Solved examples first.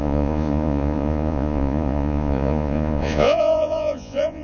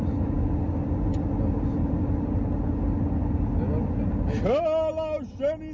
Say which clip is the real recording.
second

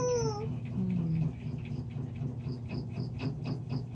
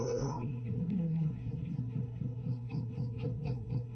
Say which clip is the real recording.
first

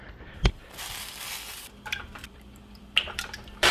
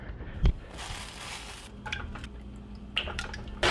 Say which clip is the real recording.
second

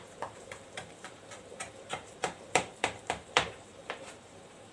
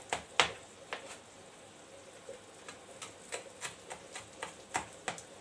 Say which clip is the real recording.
second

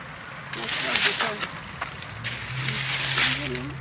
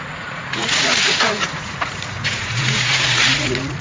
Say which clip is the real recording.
first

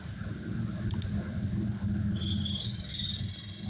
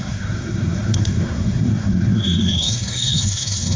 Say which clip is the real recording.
first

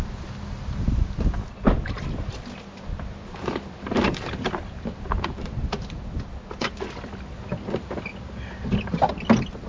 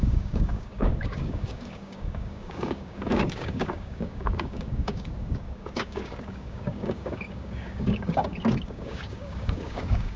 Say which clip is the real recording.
first